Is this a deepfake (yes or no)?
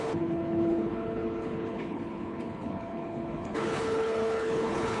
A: yes